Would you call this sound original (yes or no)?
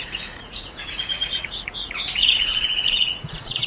no